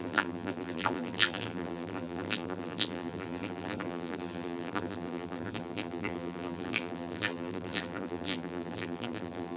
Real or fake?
fake